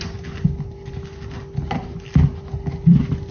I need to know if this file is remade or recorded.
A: recorded